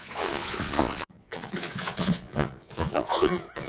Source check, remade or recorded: remade